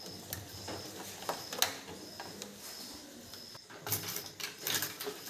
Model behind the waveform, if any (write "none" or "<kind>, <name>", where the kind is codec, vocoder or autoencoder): none